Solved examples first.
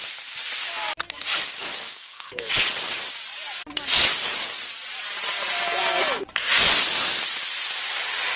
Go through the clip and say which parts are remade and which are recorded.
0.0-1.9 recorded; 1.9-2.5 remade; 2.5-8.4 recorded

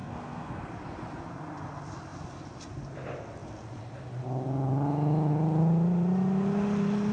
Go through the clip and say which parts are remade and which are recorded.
0.0-0.7 remade; 0.7-7.1 recorded

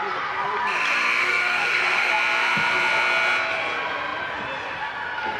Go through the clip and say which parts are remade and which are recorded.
0.0-1.2 recorded; 1.2-2.1 remade; 2.1-5.4 recorded

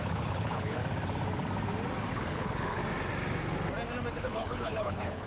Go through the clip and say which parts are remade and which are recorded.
0.0-0.8 remade; 0.8-2.1 recorded; 2.1-2.8 remade; 2.8-4.1 recorded; 4.1-5.3 remade

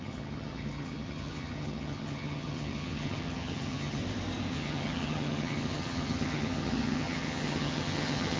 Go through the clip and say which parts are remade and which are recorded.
0.0-4.0 remade; 4.0-4.5 recorded; 4.5-8.4 remade

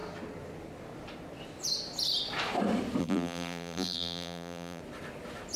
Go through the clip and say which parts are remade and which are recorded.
0.0-3.0 recorded; 3.0-4.8 remade; 4.8-5.6 recorded